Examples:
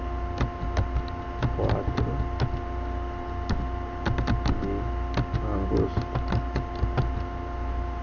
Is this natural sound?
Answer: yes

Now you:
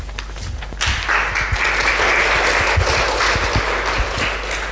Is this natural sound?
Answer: yes